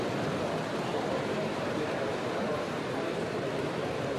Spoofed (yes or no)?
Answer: yes